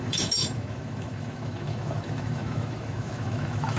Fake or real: fake